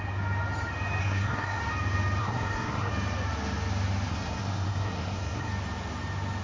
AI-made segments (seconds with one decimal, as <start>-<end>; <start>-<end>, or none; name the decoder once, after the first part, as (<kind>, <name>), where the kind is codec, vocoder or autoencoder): 1.0-1.6 (codec, SNAC); 2.2-2.9; 4.1-5.5